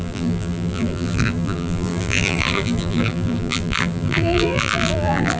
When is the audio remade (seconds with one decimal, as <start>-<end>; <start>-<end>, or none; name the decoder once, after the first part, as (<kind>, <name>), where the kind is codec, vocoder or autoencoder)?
0.0-5.4 (vocoder, BigVGAN v2)